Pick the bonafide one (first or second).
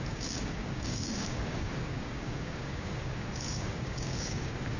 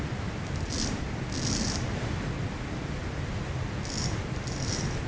second